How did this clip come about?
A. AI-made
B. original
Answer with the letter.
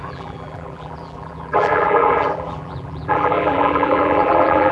A